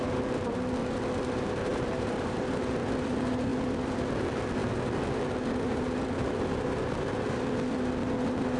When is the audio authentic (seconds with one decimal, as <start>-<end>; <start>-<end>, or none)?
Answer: 0.0-1.7; 2.5-8.6